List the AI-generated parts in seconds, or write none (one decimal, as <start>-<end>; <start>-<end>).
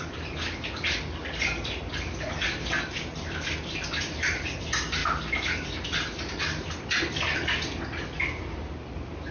none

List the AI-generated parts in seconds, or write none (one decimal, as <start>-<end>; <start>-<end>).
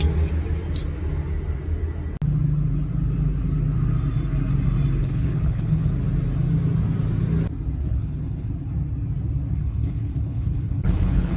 5.0-5.9; 7.8-8.5; 9.6-11.4